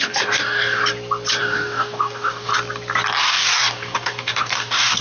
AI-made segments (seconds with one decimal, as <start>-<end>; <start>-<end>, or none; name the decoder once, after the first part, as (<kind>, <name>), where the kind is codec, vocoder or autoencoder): 0.0-0.8 (codec, DAC); 1.4-2.5; 3.2-5.0